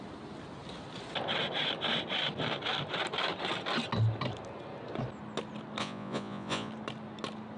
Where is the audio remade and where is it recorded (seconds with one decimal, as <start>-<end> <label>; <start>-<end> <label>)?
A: 0.0-5.8 recorded; 5.8-6.7 remade; 6.7-7.6 recorded